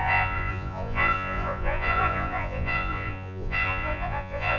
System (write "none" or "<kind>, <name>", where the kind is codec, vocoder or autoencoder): vocoder, Vocos